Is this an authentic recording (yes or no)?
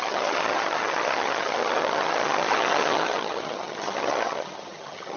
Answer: no